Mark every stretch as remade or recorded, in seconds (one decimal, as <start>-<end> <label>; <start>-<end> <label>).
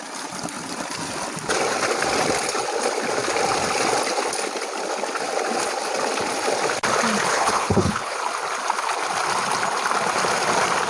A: 0.0-7.3 recorded; 7.3-8.2 remade; 8.2-10.9 recorded